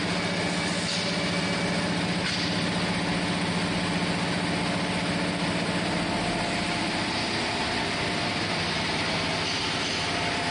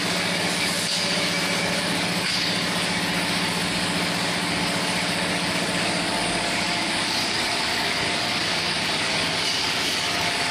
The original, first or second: first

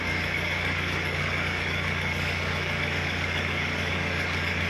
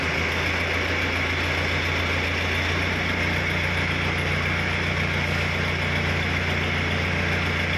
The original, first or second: second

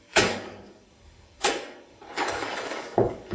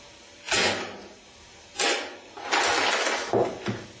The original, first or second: second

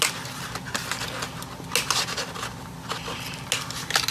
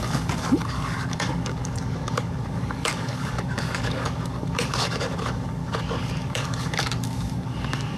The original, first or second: first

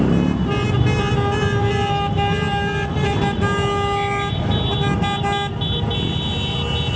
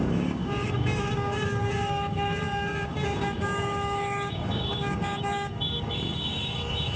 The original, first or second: first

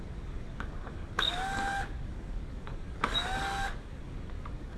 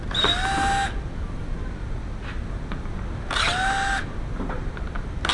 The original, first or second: second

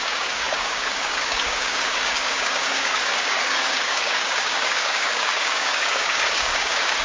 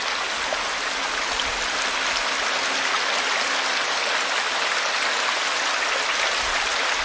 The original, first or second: second